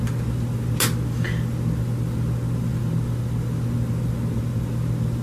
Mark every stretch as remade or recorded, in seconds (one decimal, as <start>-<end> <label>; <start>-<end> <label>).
0.0-5.2 recorded